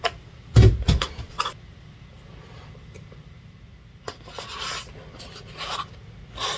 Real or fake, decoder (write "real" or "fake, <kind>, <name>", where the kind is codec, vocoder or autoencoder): real